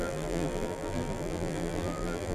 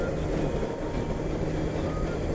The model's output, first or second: first